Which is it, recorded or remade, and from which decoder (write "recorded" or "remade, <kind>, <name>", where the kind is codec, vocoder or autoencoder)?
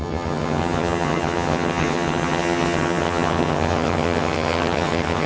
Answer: remade, vocoder, HiFi-GAN